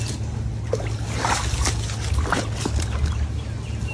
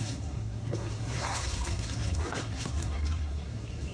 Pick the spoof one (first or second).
second